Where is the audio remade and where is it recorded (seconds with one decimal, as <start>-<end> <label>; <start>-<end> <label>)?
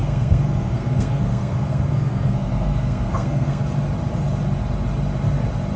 0.0-3.6 remade; 3.6-5.8 recorded